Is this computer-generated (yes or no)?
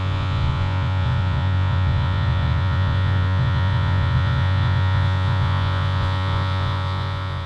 yes